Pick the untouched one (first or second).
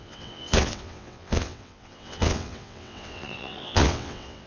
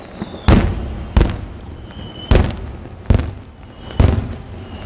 second